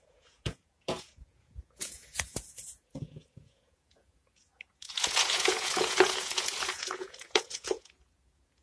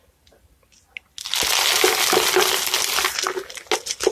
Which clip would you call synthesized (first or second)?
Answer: first